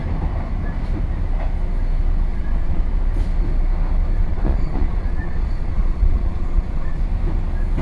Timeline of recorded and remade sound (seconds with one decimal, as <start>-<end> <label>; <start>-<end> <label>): 0.0-2.3 recorded; 2.3-2.9 remade; 2.9-4.2 recorded; 4.2-7.0 remade; 7.0-7.8 recorded